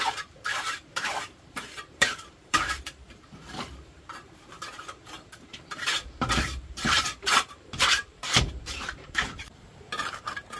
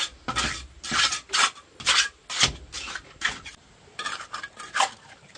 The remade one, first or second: first